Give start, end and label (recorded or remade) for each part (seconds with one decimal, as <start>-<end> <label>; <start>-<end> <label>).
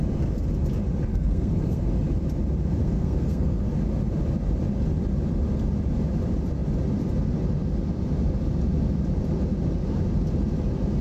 0.0-1.1 recorded; 1.1-1.9 remade; 1.9-2.8 recorded; 2.8-3.7 remade; 3.7-11.0 recorded